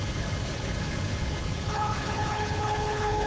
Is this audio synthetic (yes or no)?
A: yes